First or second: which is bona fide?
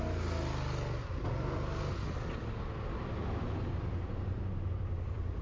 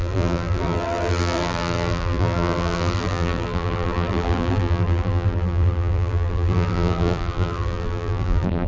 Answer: first